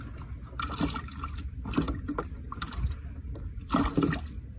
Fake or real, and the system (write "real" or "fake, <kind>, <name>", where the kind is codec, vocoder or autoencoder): real